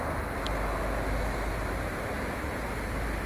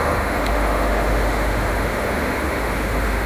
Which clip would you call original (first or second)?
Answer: first